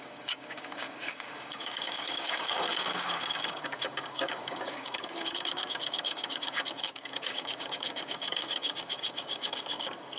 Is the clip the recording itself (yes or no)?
no